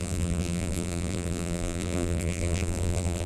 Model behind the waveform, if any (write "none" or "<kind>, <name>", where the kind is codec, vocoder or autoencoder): vocoder, BigVGAN v2